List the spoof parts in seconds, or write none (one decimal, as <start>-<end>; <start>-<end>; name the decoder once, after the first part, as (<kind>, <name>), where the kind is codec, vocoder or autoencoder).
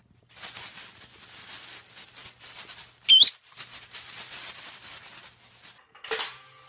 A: none